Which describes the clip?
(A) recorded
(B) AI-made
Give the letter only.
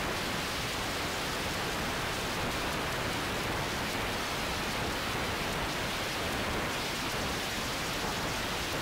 A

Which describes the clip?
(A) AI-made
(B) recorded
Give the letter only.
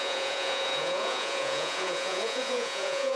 A